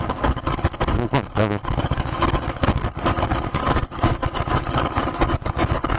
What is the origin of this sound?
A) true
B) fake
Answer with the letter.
B